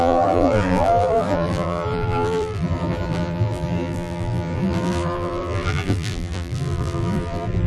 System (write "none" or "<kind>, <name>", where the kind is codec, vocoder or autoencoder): vocoder, BigVGAN v2